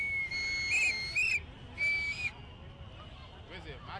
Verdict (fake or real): real